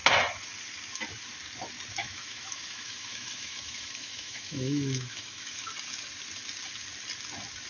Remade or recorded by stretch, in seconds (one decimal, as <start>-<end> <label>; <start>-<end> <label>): 0.0-2.0 recorded; 2.0-5.5 remade; 5.5-7.7 recorded